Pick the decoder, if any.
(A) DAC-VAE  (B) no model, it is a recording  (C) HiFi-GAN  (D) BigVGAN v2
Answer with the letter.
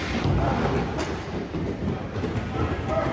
B